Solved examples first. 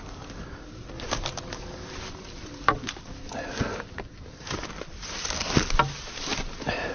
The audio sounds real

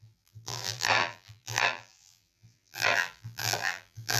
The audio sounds fake